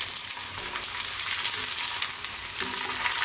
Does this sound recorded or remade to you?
recorded